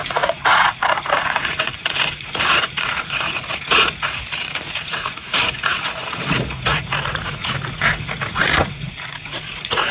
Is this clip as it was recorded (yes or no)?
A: no